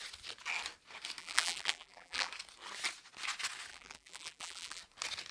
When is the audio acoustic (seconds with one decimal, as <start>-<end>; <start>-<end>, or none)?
0.0-1.2; 2.3-3.7; 4.8-5.3